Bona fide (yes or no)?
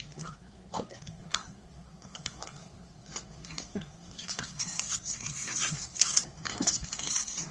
no